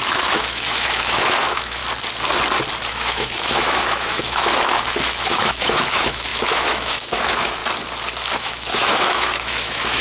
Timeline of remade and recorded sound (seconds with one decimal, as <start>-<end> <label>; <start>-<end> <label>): 0.0-1.8 remade; 1.8-2.9 recorded; 2.9-7.6 remade; 7.6-8.4 recorded; 8.4-10.0 remade